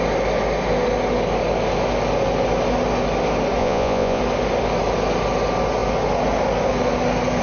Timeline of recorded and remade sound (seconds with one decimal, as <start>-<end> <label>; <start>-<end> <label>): 0.0-3.6 recorded; 3.6-4.2 remade; 4.2-7.4 recorded